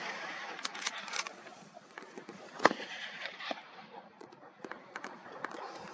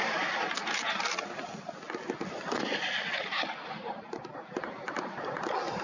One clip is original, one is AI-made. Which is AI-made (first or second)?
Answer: first